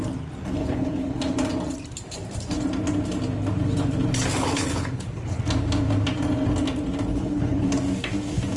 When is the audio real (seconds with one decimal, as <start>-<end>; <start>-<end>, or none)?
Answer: 0.0-0.6; 1.2-4.4; 5.4-7.1; 7.7-8.6